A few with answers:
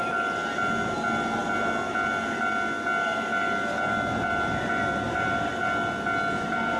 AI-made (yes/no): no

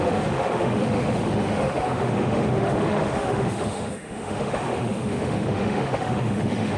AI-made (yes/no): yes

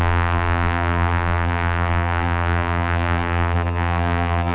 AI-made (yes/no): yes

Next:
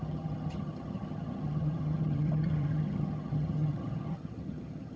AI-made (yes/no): yes